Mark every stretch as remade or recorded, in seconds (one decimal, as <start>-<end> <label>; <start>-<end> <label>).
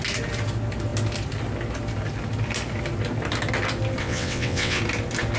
0.0-4.0 recorded; 4.0-4.8 remade; 4.8-5.4 recorded